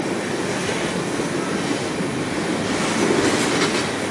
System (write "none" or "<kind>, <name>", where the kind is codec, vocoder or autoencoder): none